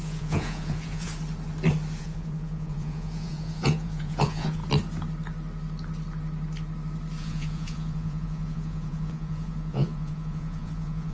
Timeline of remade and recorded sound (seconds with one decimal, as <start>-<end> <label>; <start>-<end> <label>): 0.0-1.1 remade; 1.1-2.0 recorded; 2.0-4.6 remade; 4.6-7.2 recorded; 7.2-11.1 remade